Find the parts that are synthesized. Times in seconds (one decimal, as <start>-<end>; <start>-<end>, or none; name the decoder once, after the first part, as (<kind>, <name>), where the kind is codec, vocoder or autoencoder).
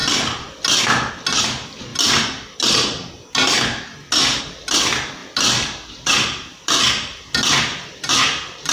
7.7-8.7 (vocoder, BigVGAN v2)